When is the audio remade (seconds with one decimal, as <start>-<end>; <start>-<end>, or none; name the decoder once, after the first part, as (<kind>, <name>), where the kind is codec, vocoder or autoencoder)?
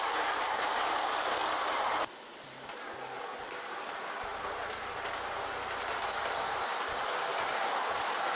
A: 0.0-1.4 (vocoder, BigVGAN v2); 3.4-4.3; 6.2-7.3; 8.0-8.4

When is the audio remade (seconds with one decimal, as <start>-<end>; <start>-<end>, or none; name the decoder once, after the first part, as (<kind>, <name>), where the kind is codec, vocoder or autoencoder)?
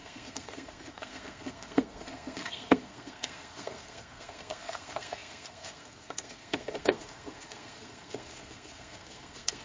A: 0.0-9.6 (codec, SNAC)